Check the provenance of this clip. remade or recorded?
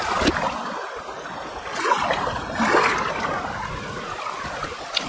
recorded